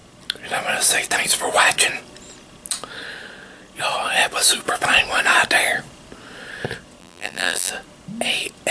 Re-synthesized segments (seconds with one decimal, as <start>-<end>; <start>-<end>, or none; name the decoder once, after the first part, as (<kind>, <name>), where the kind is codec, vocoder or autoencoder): 7.0-7.7 (vocoder, BigVGAN v2)